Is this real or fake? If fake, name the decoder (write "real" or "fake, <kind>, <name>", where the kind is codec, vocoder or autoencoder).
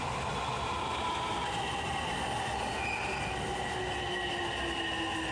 real